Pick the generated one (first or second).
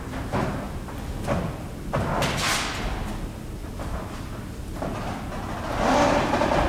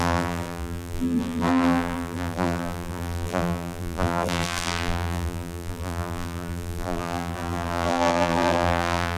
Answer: second